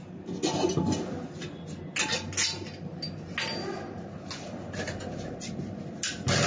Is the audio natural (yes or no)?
yes